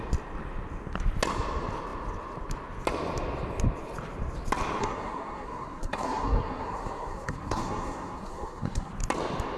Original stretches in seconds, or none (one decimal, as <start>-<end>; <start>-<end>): 0.0-4.8; 8.9-9.6